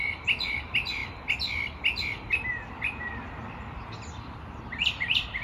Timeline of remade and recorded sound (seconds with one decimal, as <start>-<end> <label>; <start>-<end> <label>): 0.0-1.0 remade; 1.0-4.2 recorded; 4.2-5.4 remade